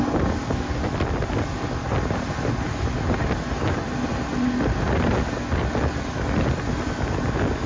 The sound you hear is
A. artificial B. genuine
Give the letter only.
B